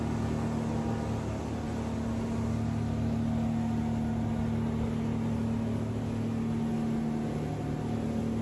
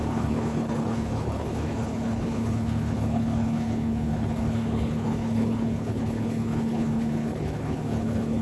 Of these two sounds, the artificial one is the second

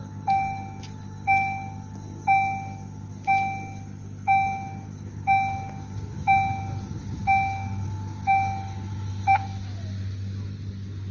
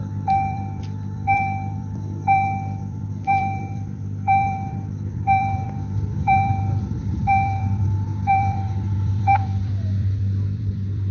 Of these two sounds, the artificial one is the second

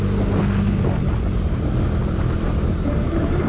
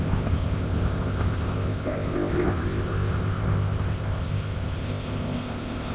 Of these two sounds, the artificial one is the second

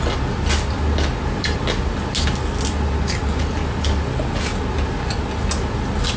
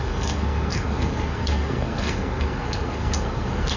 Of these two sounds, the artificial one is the second